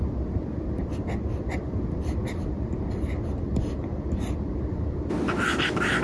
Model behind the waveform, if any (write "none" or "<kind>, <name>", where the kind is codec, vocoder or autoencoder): none